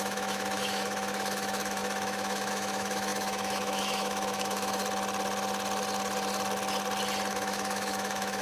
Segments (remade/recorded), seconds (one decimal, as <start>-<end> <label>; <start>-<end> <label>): 0.0-4.8 remade; 4.8-7.3 recorded; 7.3-8.4 remade